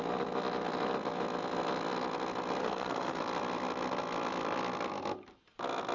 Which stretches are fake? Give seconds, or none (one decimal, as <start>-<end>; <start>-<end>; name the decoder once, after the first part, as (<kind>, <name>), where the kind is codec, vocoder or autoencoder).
2.6-3.2 (codec, SNAC)